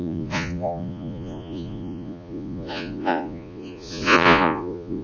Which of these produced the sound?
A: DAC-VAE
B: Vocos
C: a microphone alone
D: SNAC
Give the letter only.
B